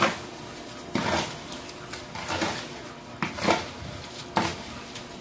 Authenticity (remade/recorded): recorded